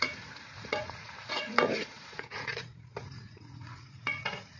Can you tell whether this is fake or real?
fake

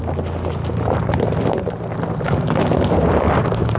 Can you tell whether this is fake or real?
real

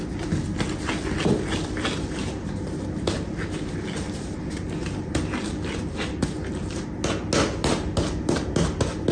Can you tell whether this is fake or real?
real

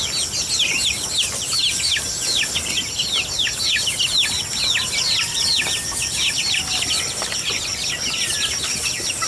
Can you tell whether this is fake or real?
real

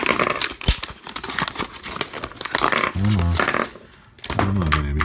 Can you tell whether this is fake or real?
real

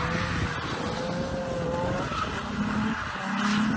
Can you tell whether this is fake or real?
real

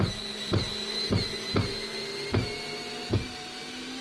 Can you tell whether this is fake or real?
real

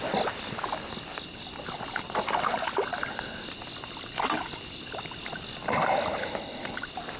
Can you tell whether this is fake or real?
real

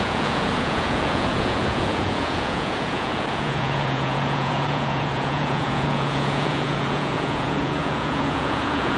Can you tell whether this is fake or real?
fake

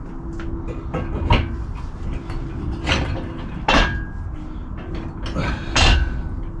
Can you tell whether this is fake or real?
real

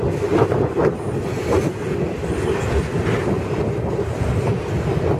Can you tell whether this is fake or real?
real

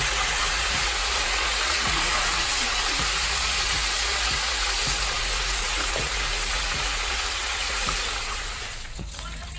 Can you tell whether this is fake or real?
fake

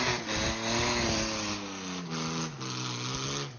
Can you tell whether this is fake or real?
real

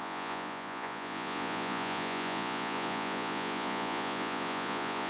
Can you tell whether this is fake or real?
fake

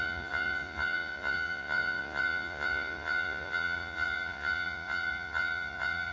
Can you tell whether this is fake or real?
fake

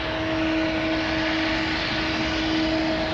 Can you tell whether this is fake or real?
real